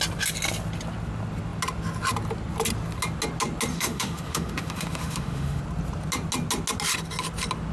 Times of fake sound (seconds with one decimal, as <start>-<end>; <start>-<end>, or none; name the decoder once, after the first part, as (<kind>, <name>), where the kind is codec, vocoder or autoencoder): 3.7-5.6 (autoencoder, DAC-VAE)

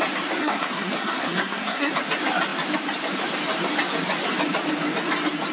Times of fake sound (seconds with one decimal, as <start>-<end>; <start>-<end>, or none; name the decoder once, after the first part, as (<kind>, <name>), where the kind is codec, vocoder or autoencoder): 0.4-1.9 (codec, SNAC)

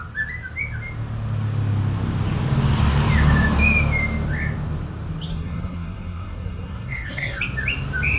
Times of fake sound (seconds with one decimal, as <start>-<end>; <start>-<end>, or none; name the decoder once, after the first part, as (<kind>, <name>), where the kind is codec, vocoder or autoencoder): 5.3-7.4 (codec, SNAC)

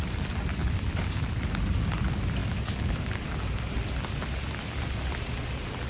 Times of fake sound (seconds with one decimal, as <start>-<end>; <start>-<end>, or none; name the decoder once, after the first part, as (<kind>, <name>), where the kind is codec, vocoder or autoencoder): 2.4-3.3 (codec, DAC)

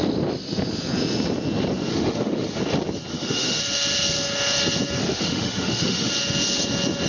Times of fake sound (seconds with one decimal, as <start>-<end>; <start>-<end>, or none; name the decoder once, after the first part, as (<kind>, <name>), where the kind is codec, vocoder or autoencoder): 1.9-2.6 (autoencoder, DAC-VAE); 3.1-3.6; 5.0-6.1

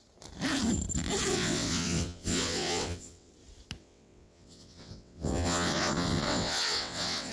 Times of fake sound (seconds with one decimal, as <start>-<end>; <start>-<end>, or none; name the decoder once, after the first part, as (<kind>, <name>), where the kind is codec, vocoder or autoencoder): 1.3-3.3 (vocoder, WaveNeXt); 3.8-7.3

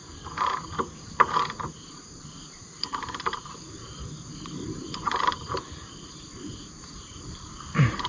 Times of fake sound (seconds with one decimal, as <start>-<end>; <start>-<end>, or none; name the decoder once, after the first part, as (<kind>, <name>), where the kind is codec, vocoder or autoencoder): 1.7-8.1 (vocoder, BigVGAN v2)

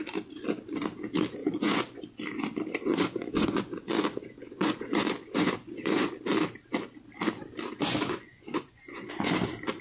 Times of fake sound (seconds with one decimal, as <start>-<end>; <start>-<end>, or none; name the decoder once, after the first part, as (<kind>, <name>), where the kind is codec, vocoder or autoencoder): 1.4-2.0 (vocoder, Vocos); 2.9-6.1; 7.9-9.3